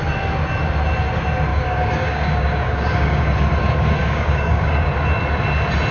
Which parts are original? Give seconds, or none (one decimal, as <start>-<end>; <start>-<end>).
0.0-1.5; 3.2-4.0; 4.9-5.9